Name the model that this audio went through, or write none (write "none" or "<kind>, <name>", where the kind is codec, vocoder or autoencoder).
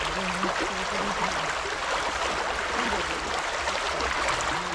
none